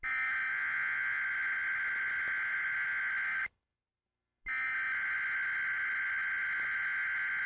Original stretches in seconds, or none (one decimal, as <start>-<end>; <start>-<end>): 0.0-0.5; 1.2-7.5